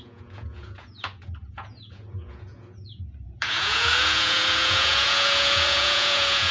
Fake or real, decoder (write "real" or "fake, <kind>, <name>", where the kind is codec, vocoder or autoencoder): fake, vocoder, Vocos